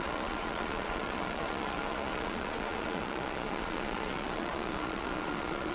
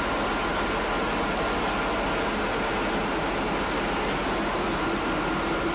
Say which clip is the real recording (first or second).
second